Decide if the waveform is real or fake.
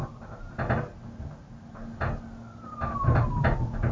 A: real